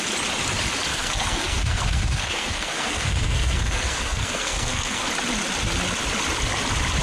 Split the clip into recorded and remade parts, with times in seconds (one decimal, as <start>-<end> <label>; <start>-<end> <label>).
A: 0.0-0.9 recorded; 0.9-5.1 remade; 5.1-7.0 recorded